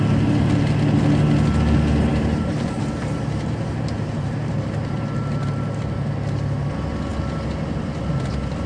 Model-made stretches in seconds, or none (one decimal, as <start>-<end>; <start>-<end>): 2.1-5.8